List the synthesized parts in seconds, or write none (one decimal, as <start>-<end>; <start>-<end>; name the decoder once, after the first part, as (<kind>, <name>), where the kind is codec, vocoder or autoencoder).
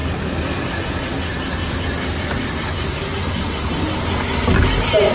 none